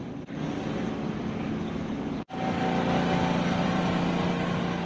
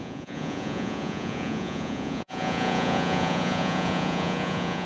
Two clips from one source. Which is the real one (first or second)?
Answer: first